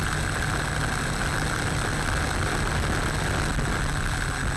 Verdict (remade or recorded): recorded